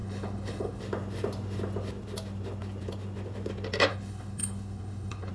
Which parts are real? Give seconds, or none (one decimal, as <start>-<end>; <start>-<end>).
0.8-3.9